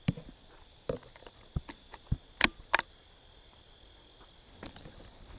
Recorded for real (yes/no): yes